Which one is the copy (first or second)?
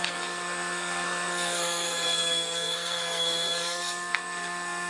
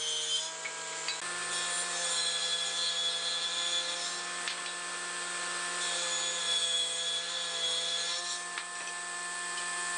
first